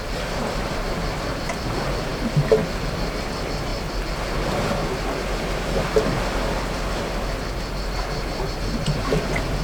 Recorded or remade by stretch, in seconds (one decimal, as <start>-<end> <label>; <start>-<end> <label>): 0.0-2.1 remade; 2.1-2.8 recorded; 2.8-3.7 remade; 3.7-8.5 recorded; 8.5-9.6 remade